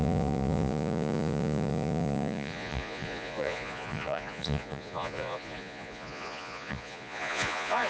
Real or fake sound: fake